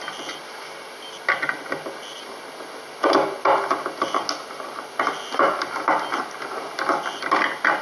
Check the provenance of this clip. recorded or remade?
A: recorded